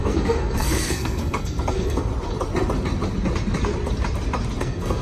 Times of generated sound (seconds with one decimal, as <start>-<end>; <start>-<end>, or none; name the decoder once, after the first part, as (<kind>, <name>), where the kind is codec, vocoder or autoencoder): 0.0-2.1 (codec, SNAC); 4.6-5.0